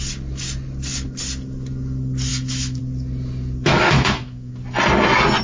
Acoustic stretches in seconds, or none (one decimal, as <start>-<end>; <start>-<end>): 0.0-2.3; 2.8-3.7; 4.5-5.4